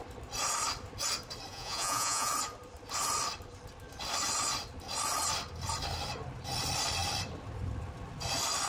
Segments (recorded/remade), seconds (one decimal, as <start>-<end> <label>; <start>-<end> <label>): 0.0-1.5 recorded; 1.5-2.3 remade; 2.3-8.7 recorded